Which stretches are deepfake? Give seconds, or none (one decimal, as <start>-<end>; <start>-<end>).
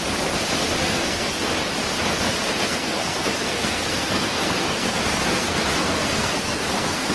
0.8-1.5; 2.6-7.1